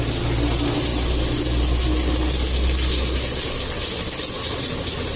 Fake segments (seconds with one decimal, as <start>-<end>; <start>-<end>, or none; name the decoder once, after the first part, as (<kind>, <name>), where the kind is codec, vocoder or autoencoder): none